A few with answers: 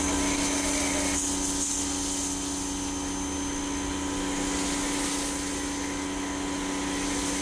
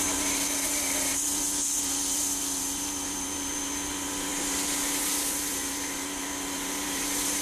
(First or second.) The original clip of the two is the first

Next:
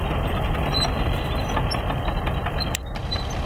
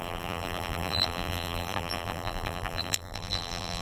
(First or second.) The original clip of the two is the first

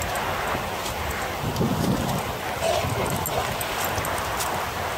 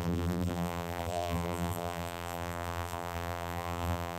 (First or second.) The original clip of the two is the first